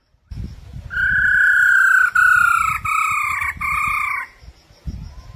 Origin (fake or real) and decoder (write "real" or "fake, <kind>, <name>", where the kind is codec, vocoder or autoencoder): real